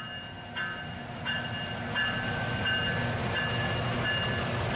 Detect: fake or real real